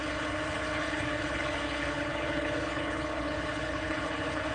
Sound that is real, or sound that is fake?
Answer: fake